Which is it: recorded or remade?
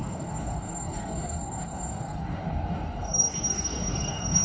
remade